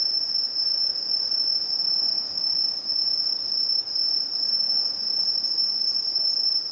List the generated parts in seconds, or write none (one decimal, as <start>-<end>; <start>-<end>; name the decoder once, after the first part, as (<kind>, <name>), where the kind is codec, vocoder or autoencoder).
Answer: 0.0-6.7 (vocoder, BigVGAN v2)